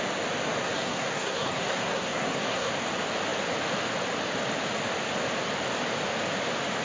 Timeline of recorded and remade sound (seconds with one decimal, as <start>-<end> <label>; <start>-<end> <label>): 0.0-0.6 recorded; 0.6-2.7 remade; 2.7-6.8 recorded